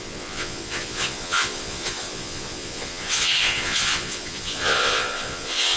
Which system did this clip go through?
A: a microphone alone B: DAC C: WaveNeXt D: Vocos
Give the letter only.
D